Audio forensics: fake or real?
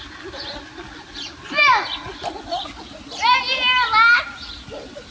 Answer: real